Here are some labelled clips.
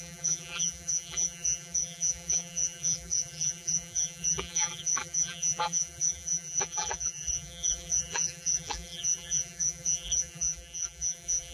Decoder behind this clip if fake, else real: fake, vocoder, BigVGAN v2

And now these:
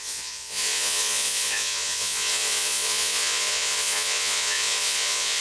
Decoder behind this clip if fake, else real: fake, vocoder, Vocos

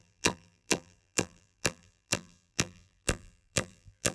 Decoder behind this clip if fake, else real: fake, vocoder, BigVGAN v2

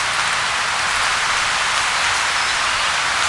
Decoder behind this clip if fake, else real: real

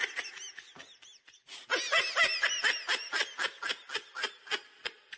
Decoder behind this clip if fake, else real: real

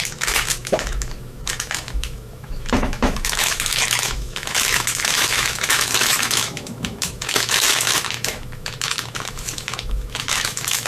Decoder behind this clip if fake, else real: fake, autoencoder, DAC-VAE